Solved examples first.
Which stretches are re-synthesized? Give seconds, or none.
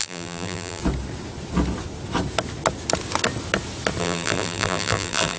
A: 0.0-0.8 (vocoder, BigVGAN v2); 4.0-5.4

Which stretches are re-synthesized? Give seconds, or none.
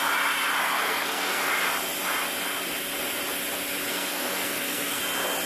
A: 0.6-1.5 (codec, SNAC); 3.9-5.0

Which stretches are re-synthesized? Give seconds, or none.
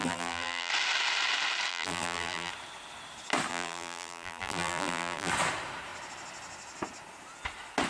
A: 0.0-0.7 (vocoder, BigVGAN v2); 1.7-2.5; 3.5-5.3